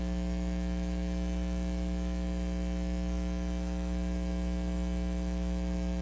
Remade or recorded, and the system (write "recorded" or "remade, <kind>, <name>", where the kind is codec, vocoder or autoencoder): remade, autoencoder, DAC-VAE